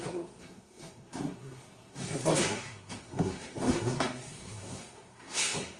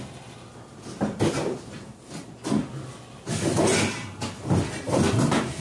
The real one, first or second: second